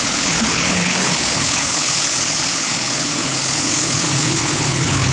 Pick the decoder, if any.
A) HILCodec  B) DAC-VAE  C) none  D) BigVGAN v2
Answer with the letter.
A